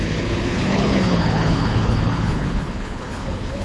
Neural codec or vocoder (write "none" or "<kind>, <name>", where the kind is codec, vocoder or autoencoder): codec, HILCodec